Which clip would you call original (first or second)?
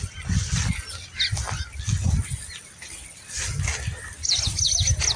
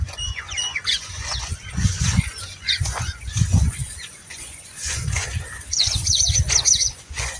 first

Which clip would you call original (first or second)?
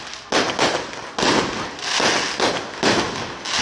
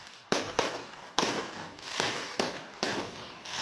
first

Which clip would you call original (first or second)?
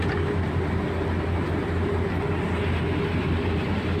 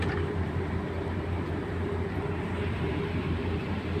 first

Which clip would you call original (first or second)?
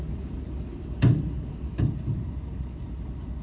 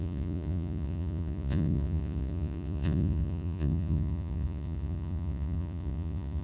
first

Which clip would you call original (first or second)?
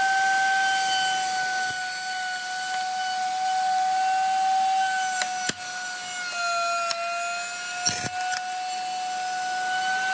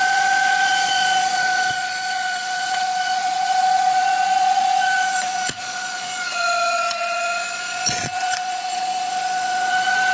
first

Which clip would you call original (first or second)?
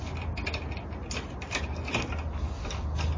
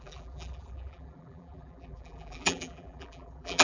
first